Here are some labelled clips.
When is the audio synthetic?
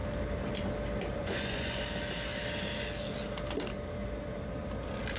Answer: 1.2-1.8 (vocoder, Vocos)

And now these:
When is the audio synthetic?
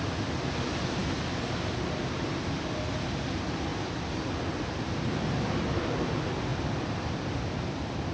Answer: none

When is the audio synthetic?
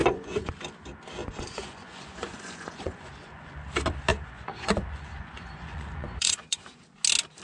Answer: 0.0-0.5 (vocoder, Vocos); 1.2-3.6; 4.1-6.8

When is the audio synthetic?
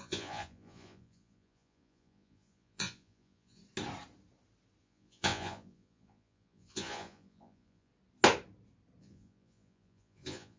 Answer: 0.0-3.6 (vocoder, Vocos); 4.8-7.9; 9.0-10.6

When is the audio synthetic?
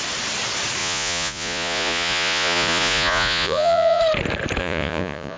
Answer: 0.8-4.0 (vocoder, Vocos); 4.6-5.4